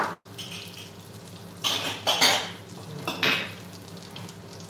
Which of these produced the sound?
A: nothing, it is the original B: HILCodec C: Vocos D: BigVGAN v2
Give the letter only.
A